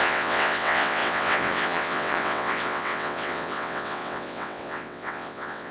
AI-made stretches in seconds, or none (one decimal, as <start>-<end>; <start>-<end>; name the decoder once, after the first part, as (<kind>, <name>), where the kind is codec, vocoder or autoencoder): 0.0-5.7 (vocoder, WaveNeXt)